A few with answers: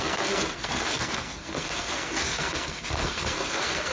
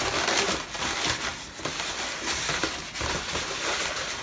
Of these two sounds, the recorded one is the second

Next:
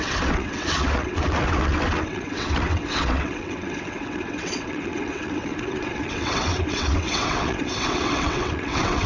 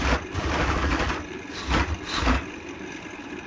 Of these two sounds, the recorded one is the second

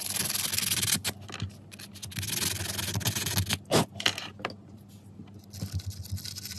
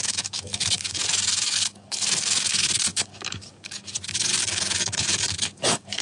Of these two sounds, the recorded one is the first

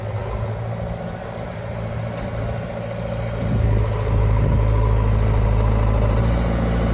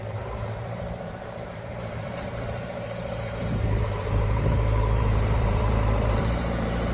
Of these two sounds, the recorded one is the first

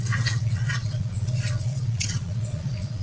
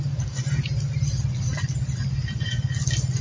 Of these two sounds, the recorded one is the second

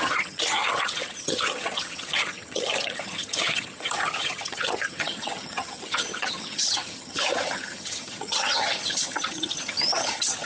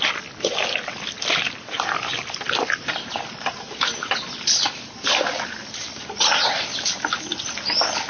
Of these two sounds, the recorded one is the second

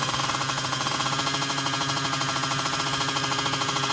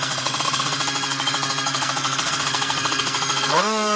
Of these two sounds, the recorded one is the first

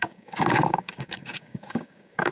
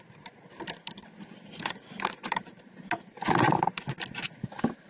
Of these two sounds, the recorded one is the second